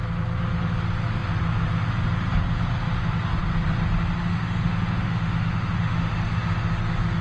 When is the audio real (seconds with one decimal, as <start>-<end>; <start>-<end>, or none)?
0.0-4.3; 6.1-7.2